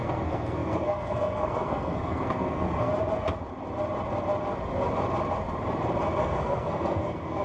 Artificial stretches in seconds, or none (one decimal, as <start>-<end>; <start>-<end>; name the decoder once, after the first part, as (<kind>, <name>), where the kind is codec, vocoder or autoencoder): 0.0-2.9 (codec, SNAC); 6.2-7.4